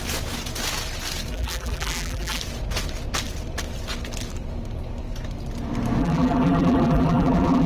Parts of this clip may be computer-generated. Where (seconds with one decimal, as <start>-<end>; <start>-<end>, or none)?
1.3-2.4; 6.0-7.7